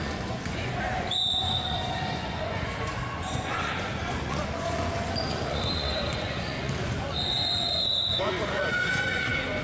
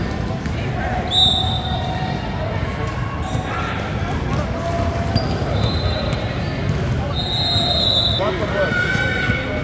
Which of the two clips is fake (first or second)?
first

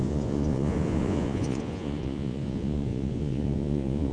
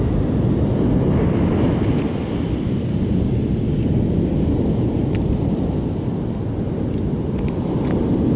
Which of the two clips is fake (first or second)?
first